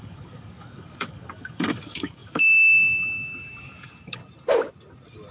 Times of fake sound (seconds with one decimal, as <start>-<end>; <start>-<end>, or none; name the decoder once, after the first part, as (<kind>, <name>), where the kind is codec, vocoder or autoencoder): 0.0-4.2 (codec, DAC)